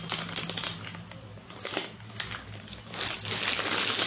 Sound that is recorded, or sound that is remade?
recorded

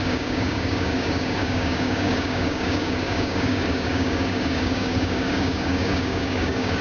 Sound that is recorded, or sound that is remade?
remade